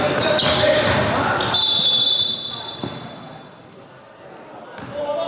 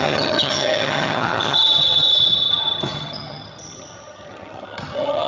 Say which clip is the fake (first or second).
second